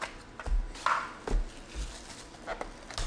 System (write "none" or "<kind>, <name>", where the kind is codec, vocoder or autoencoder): none